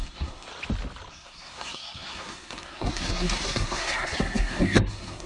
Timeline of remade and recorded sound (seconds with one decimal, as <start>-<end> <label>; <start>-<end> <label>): 0.0-0.5 remade; 0.5-1.1 recorded; 1.1-5.3 remade